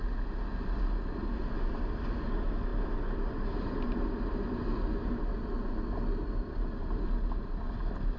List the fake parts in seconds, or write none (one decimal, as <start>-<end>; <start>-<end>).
none

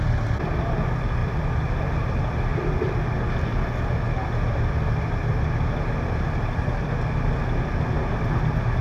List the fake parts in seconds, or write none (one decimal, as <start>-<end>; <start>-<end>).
none

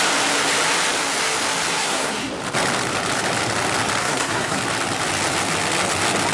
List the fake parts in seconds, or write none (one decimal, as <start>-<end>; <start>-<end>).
1.7-2.3; 4.0-4.6

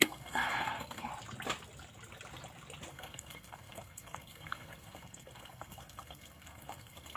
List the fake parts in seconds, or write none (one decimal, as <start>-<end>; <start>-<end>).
0.0-1.1; 2.9-7.2

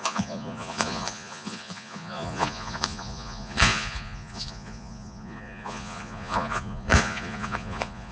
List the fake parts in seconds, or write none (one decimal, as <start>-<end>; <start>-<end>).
0.0-8.1

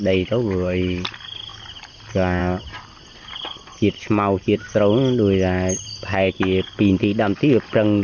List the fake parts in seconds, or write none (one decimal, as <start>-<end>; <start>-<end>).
none

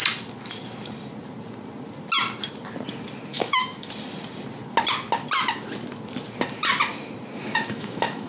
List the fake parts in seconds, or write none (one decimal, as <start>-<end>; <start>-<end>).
3.3-3.9; 7.4-8.3